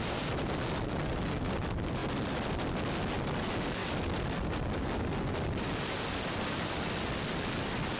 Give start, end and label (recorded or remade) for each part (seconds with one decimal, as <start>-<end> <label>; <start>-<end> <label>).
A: 0.0-8.0 recorded